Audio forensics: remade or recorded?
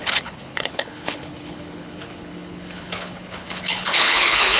remade